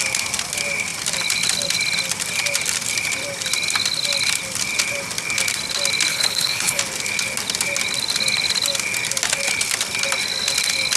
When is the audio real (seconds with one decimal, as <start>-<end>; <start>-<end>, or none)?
0.0-6.1; 6.8-11.0